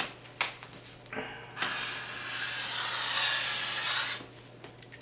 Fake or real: real